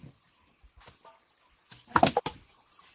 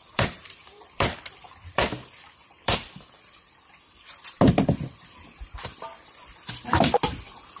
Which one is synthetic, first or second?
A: second